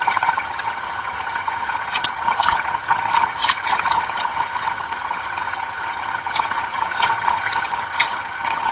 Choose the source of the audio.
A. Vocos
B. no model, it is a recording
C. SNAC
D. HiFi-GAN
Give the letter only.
D